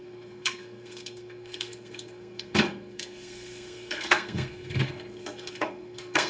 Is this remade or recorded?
remade